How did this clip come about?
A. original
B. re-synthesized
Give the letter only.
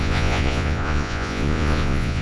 B